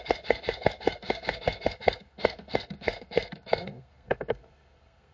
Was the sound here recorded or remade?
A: remade